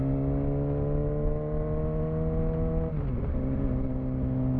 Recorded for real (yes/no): yes